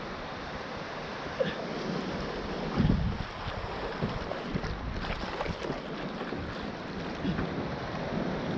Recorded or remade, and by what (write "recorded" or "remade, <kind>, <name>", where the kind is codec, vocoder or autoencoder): recorded